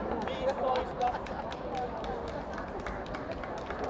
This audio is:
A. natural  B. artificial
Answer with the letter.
A